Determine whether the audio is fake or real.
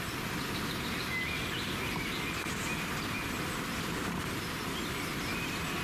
real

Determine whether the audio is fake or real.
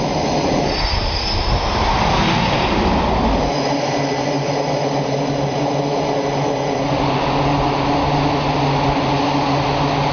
real